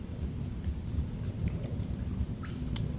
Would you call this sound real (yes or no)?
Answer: yes